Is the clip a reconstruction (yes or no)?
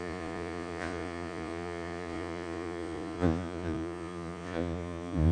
yes